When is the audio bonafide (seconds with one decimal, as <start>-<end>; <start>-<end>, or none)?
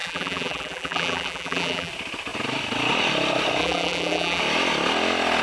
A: 1.9-3.6; 4.4-5.4